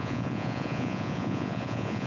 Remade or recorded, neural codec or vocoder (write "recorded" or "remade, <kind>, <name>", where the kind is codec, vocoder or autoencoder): remade, vocoder, Vocos